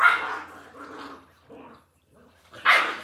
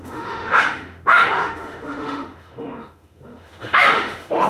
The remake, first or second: second